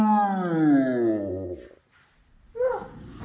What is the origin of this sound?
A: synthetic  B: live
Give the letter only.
B